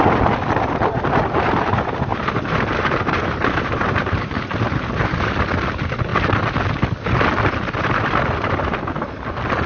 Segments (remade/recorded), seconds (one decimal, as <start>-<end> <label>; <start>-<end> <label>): 0.0-0.9 recorded; 0.9-5.3 remade; 5.3-9.7 recorded